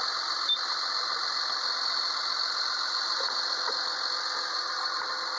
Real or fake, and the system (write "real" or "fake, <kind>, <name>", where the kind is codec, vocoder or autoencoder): real